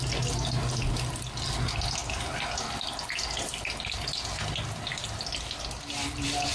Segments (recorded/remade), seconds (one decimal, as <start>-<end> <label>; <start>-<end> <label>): 0.0-6.5 recorded